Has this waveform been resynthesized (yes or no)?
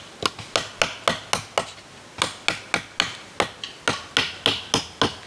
no